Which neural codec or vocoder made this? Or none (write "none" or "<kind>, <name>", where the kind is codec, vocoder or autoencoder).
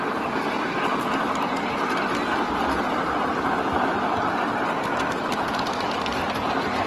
none